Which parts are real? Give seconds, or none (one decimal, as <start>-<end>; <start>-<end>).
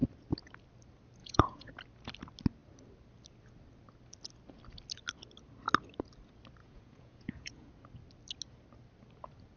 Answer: 0.0-1.2; 1.7-6.6; 7.7-9.6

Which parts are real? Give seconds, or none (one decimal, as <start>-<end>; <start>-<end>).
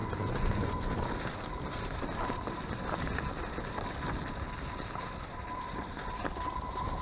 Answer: 1.1-7.0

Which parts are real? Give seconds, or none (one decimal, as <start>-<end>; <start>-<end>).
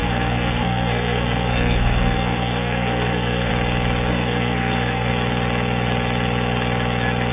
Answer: 3.5-4.1; 5.1-7.3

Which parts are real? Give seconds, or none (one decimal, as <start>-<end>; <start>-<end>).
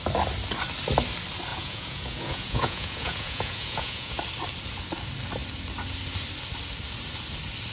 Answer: 0.0-1.5; 4.2-7.7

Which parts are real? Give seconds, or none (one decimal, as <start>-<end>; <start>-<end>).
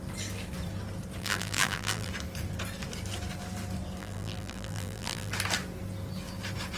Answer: 0.0-1.2; 2.1-4.0; 5.3-6.8